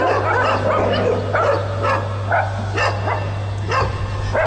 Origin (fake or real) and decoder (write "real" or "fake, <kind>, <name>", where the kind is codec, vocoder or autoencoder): real